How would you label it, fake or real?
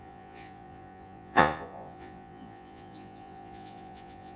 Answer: fake